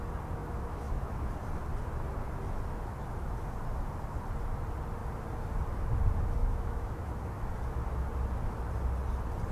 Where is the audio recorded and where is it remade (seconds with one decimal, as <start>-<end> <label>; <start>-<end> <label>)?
0.0-0.4 recorded; 0.4-1.3 remade; 1.3-6.4 recorded; 6.4-7.4 remade; 7.4-9.5 recorded